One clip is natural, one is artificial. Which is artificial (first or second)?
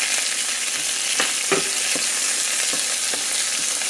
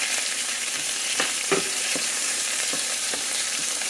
second